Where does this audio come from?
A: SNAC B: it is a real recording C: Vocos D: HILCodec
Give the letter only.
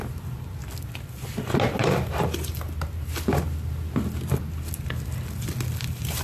B